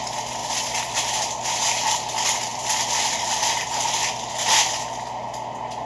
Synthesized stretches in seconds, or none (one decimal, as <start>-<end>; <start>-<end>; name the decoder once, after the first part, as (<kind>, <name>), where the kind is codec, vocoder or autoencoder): 0.4-1.9 (vocoder, BigVGAN v2); 2.5-4.3